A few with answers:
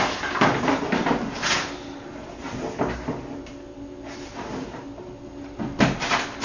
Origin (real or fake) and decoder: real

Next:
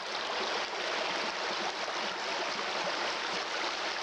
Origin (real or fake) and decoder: real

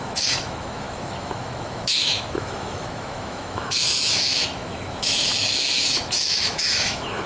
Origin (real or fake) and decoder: fake, autoencoder, DAC-VAE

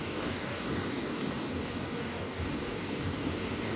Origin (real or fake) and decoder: fake, codec, DAC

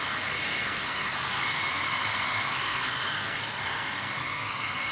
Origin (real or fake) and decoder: fake, codec, SNAC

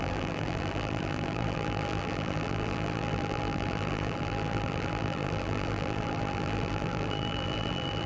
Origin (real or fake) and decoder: fake, vocoder, BigVGAN v2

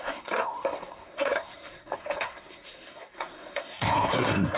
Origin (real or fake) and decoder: fake, codec, SNAC